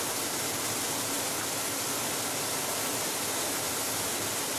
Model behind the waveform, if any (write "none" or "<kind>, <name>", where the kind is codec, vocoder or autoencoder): none